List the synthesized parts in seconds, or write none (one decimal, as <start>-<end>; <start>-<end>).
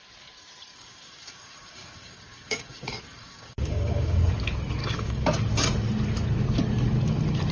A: 0.7-4.3; 4.8-5.3